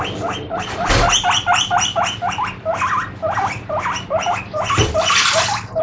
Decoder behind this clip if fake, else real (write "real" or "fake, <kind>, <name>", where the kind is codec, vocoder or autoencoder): real